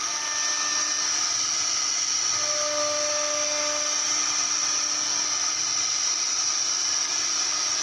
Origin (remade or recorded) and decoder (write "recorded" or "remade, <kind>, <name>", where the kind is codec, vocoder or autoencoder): recorded